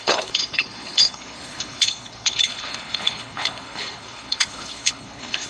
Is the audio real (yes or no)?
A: no